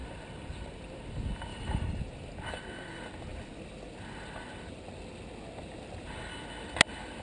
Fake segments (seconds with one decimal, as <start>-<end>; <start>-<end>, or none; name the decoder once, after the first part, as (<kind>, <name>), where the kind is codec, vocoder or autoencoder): 1.5-2.0 (vocoder, BigVGAN v2)